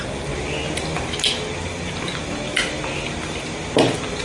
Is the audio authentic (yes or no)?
yes